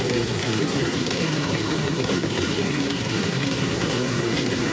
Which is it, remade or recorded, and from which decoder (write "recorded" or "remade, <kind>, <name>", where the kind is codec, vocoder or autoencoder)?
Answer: remade, codec, SNAC